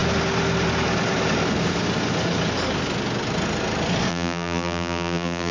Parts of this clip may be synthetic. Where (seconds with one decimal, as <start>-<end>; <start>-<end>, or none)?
4.1-5.5